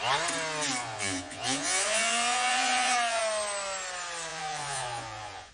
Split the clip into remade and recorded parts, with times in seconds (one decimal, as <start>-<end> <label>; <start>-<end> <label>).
0.0-0.8 recorded; 0.8-3.2 remade; 3.2-4.3 recorded; 4.3-5.5 remade